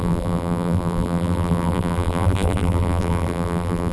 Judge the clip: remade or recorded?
remade